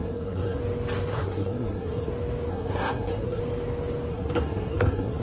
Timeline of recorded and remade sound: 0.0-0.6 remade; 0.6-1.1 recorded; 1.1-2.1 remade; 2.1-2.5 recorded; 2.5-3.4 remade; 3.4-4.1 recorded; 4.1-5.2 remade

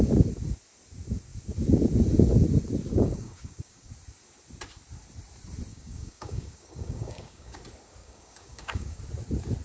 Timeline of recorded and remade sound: 0.0-2.9 recorded; 2.9-3.9 remade; 3.9-5.7 recorded; 5.7-7.6 remade; 7.6-8.0 recorded; 8.0-9.0 remade; 9.0-9.6 recorded

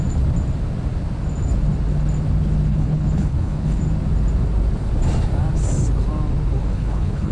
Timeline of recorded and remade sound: 0.0-2.7 recorded; 2.7-3.8 remade; 3.8-6.6 recorded; 6.6-7.3 remade

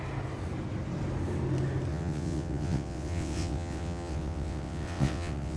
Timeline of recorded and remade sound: 0.0-1.9 recorded; 1.9-5.6 remade

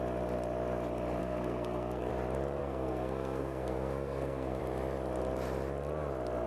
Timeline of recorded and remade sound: 0.0-1.2 recorded; 1.2-2.1 remade; 2.1-2.6 recorded; 2.6-4.6 remade; 4.6-6.5 recorded

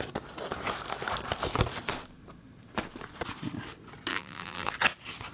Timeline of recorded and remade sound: 0.0-4.1 recorded; 4.1-4.7 remade; 4.7-5.3 recorded

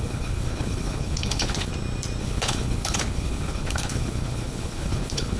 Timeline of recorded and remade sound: 0.0-1.7 remade; 1.7-2.2 recorded; 2.2-5.4 remade